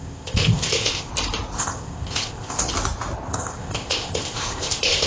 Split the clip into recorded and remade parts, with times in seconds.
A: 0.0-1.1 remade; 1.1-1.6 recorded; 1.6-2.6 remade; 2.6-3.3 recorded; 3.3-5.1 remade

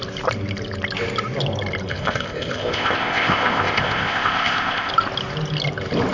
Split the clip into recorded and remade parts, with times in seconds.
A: 0.0-1.9 recorded; 1.9-4.9 remade; 4.9-6.1 recorded

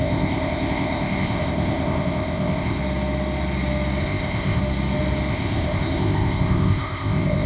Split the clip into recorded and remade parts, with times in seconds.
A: 0.0-2.8 remade; 2.8-4.0 recorded; 4.0-4.6 remade; 4.6-5.3 recorded; 5.3-7.5 remade

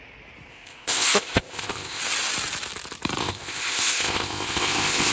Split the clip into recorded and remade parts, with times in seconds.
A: 0.0-0.5 recorded; 0.5-2.0 remade; 2.0-3.2 recorded; 3.2-5.1 remade

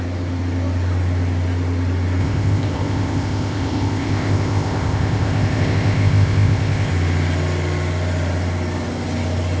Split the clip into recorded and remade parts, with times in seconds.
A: 0.0-2.2 recorded; 2.2-6.9 remade; 6.9-9.6 recorded

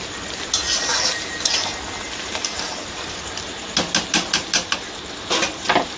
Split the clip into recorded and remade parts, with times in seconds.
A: 0.0-6.0 recorded

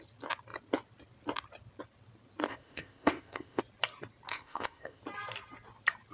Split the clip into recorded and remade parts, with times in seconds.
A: 0.0-2.5 recorded; 2.5-3.6 remade; 3.6-4.3 recorded; 4.3-5.0 remade; 5.0-6.1 recorded

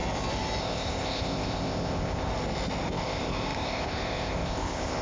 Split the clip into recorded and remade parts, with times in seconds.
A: 0.0-0.6 recorded; 0.6-2.3 remade; 2.3-2.9 recorded; 2.9-5.0 remade